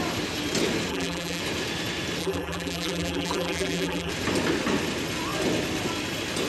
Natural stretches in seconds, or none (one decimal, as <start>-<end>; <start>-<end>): 0.0-0.9; 1.4-2.2; 4.1-6.5